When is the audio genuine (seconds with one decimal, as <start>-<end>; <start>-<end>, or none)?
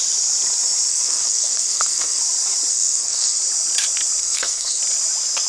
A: 0.0-0.9; 2.2-2.7; 3.4-4.2; 4.8-5.5